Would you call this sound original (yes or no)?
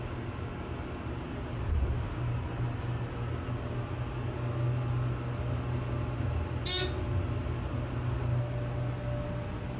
yes